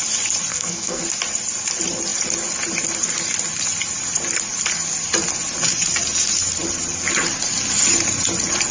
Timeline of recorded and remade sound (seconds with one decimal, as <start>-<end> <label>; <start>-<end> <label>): 0.0-0.5 recorded; 0.5-1.0 remade; 1.0-8.7 recorded